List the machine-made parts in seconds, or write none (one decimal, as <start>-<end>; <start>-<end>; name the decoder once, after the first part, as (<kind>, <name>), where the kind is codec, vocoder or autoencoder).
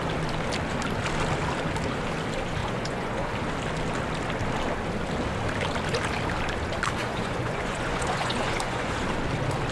2.6-3.3 (vocoder, Vocos); 7.0-9.0